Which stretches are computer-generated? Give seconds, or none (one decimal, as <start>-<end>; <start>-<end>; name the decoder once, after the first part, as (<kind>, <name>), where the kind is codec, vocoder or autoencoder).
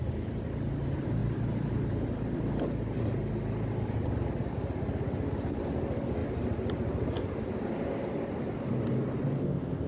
9.4-9.9 (codec, ZipCodec)